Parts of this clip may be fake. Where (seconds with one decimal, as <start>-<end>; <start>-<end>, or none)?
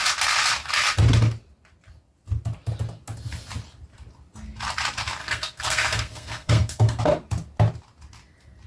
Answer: 5.2-7.0